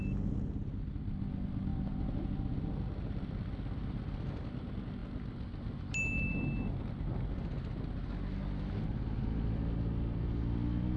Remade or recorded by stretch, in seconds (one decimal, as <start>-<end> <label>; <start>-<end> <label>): 0.0-11.0 recorded